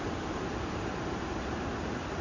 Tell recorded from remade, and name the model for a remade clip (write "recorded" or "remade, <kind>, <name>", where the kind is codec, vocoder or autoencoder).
recorded